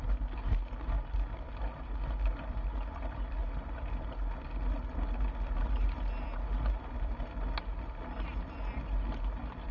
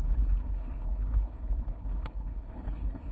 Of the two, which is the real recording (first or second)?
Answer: first